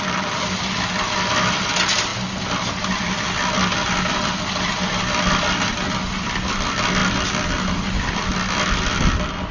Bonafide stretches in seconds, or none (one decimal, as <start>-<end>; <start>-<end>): 0.0-9.5